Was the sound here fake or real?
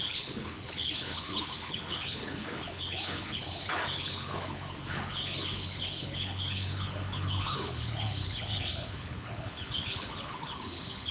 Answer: fake